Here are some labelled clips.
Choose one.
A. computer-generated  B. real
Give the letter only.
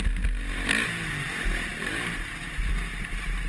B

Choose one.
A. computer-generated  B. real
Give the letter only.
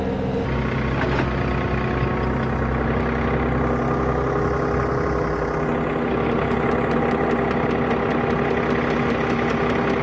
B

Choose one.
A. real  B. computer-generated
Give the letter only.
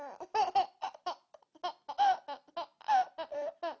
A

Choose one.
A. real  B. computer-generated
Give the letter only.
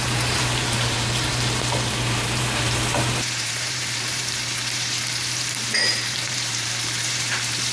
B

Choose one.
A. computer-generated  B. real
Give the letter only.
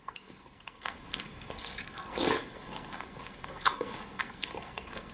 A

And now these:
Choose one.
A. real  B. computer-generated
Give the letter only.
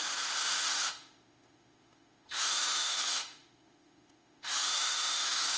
B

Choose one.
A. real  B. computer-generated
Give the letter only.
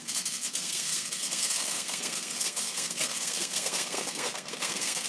B